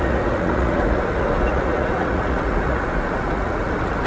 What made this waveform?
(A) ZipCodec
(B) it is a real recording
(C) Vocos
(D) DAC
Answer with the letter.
C